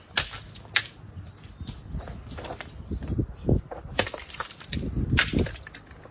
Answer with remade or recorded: recorded